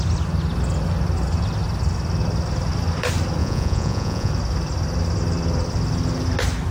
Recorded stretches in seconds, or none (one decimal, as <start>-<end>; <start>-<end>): 0.0-3.4; 4.3-6.7